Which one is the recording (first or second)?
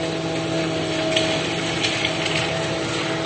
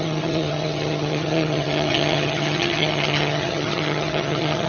first